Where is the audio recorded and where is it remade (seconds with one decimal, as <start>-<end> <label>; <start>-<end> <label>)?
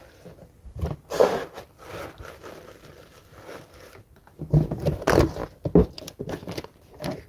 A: 0.0-1.2 recorded; 1.2-4.5 remade; 4.5-5.4 recorded; 5.4-7.3 remade